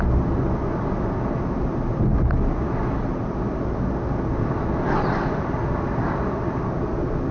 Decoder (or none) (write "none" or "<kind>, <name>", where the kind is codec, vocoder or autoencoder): none